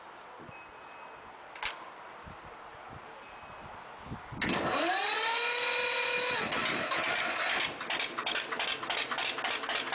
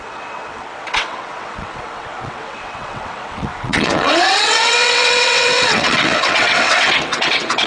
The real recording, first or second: first